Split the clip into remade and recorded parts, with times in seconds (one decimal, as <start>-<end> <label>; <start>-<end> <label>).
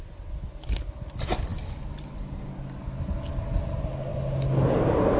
0.0-5.2 recorded